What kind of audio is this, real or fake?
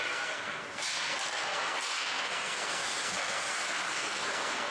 fake